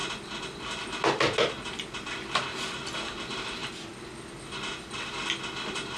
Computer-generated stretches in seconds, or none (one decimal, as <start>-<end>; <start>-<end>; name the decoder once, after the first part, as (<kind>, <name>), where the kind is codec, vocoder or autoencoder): none